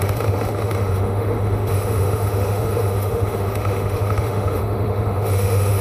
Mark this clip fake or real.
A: fake